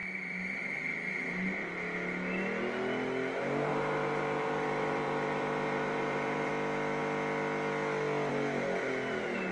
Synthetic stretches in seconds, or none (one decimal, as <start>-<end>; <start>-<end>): 0.0-0.6; 3.7-6.5